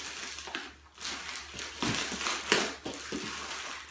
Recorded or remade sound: recorded